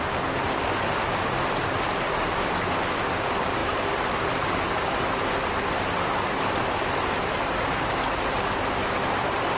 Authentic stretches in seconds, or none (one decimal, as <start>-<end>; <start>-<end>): 0.0-9.6